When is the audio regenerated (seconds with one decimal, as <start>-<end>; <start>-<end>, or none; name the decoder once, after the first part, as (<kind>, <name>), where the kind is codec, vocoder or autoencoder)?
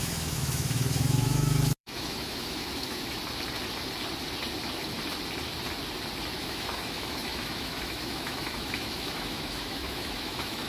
0.0-3.2 (autoencoder, DAC-VAE); 6.4-10.7